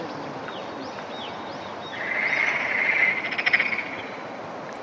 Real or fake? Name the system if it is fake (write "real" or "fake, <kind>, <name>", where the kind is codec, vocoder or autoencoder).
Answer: real